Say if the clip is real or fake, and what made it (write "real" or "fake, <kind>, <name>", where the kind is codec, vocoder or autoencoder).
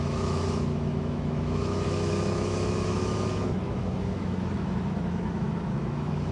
fake, autoencoder, DAC-VAE